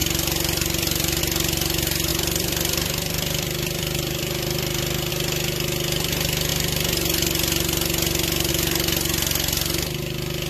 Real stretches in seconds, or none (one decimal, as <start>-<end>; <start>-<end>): 1.2-2.1; 5.1-10.5